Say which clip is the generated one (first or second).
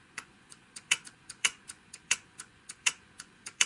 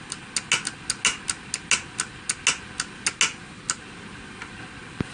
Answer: first